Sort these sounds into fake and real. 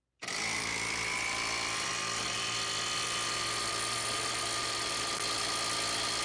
real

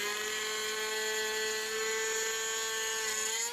real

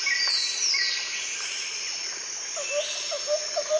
real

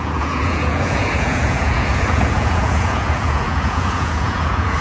fake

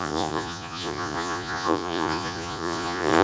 fake